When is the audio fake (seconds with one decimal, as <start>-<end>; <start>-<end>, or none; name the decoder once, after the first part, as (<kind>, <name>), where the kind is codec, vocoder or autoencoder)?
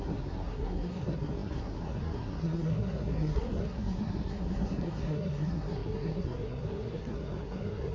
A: 0.0-7.9 (codec, SNAC)